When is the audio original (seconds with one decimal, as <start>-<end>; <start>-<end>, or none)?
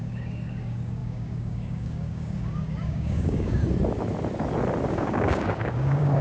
3.6-4.9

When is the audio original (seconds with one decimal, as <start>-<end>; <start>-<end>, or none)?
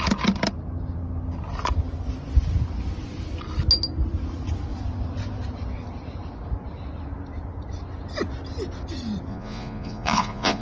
0.0-9.3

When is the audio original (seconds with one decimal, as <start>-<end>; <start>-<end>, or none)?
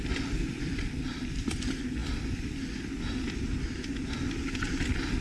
0.0-5.2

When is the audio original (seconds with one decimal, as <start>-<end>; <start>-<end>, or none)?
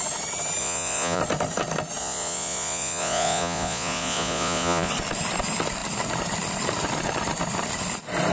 0.0-0.6; 1.2-2.0; 4.9-8.3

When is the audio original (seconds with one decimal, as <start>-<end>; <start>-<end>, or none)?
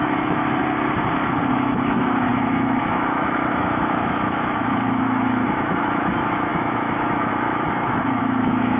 0.6-1.5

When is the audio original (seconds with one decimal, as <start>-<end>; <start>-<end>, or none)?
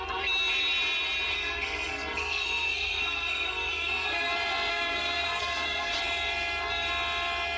0.0-1.3; 4.3-4.7; 5.9-7.6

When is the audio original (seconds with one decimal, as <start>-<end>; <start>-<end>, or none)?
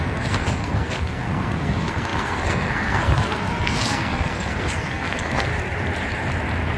5.5-6.8